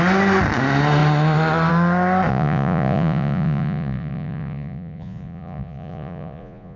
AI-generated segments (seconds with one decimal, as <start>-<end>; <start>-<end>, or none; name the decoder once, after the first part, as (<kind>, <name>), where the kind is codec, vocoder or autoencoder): 2.3-6.8 (vocoder, Vocos)